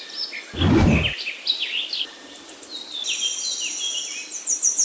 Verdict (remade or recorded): recorded